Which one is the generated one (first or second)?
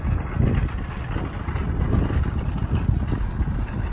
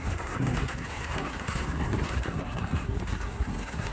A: second